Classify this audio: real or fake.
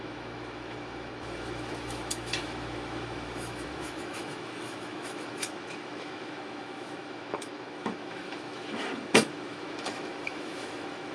fake